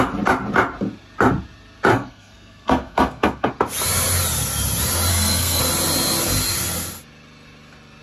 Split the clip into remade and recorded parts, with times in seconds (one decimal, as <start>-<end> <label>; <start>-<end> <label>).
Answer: 0.0-1.9 recorded; 1.9-3.5 remade; 3.5-5.1 recorded; 5.1-5.6 remade; 5.6-8.0 recorded